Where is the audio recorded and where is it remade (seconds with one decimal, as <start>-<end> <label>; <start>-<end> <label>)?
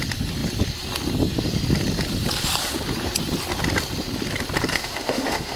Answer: 0.0-4.7 recorded; 4.7-5.6 remade